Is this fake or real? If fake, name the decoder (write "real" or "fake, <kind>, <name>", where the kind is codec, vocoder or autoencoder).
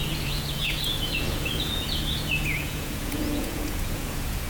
fake, vocoder, Vocos